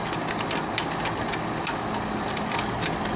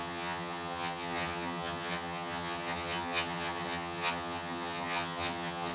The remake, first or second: second